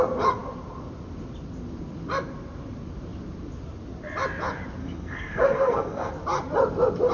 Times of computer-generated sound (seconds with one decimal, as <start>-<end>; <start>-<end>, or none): 4.8-6.1